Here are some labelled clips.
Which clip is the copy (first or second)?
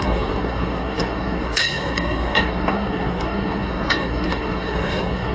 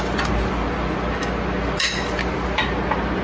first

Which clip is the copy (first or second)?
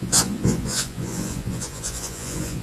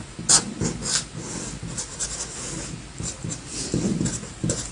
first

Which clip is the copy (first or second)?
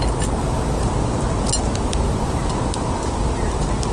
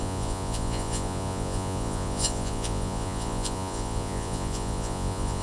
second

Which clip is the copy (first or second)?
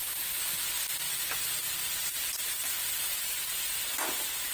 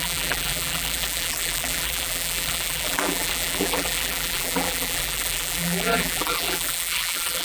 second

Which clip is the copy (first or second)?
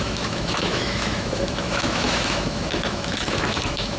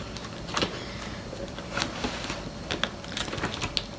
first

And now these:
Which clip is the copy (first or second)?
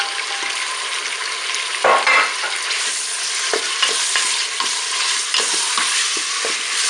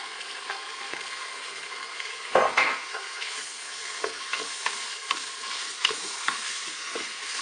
second